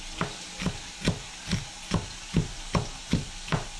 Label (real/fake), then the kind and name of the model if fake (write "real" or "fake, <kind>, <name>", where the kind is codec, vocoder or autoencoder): real